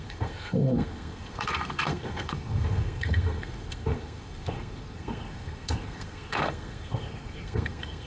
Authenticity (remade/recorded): remade